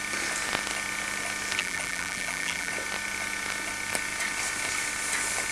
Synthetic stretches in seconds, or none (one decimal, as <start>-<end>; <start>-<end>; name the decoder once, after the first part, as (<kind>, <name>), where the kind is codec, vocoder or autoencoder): 1.6-2.7 (vocoder, BigVGAN v2)